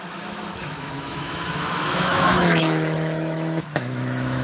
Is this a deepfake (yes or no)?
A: yes